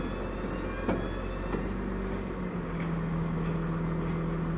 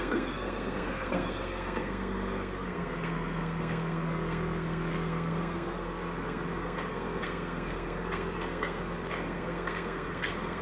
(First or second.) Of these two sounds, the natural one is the first